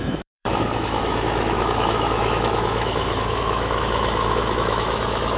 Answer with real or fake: fake